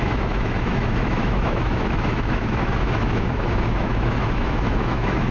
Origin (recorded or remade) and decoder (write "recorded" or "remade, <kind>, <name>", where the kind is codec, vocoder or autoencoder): remade, autoencoder, DAC-VAE